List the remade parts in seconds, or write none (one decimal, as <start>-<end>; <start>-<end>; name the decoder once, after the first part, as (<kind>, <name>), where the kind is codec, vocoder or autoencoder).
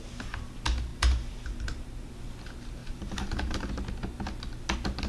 0.9-2.1 (vocoder, BigVGAN v2); 2.8-3.7